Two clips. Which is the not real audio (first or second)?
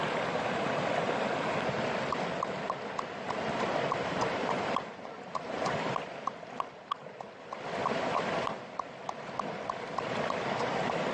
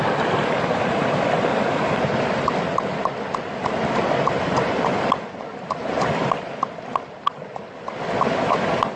first